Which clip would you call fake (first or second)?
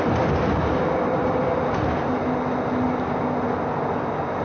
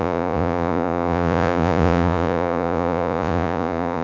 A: second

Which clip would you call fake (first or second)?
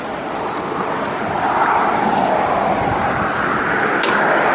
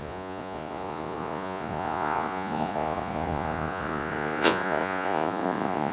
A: second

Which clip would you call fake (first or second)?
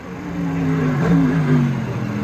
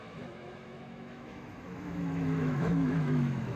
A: second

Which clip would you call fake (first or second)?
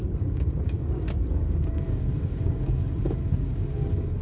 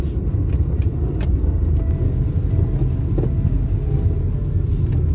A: first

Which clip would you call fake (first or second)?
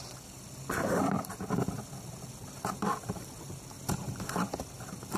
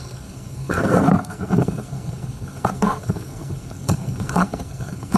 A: second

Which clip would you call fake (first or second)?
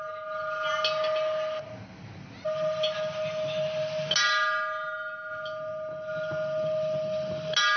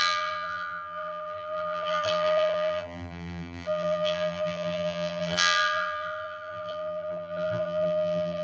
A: second